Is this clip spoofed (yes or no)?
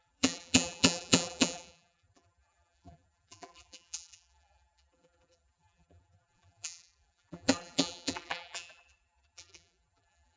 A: yes